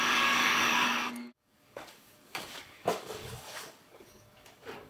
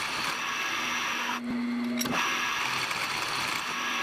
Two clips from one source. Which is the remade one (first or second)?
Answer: first